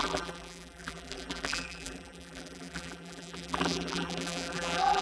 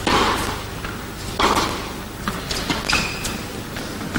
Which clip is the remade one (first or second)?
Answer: first